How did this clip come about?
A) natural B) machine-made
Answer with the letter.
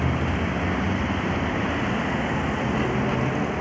A